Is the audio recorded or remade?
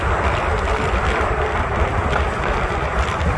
remade